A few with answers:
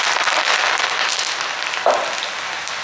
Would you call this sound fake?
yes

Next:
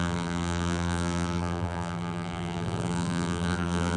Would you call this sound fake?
yes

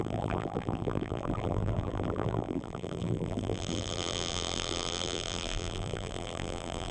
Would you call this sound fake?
yes